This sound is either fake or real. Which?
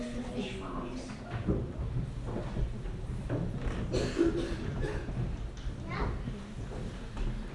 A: real